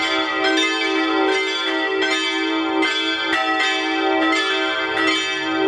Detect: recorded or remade recorded